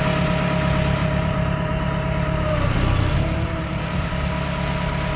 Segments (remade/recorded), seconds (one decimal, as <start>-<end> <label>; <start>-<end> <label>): 0.0-1.0 recorded; 1.0-4.1 remade; 4.1-5.2 recorded